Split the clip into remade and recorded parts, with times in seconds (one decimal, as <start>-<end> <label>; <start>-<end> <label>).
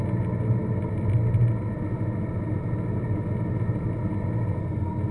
0.0-5.1 recorded